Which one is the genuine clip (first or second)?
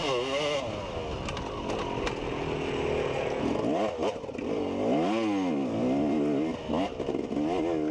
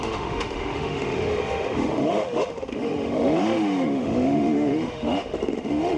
first